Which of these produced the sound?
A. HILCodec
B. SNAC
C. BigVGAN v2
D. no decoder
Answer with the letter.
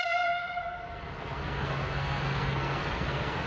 B